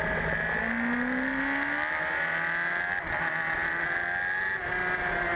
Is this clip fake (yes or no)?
no